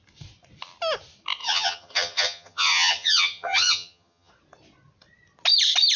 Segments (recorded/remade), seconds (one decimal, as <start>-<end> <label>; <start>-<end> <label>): 0.0-1.4 recorded; 1.4-4.3 remade; 4.3-6.0 recorded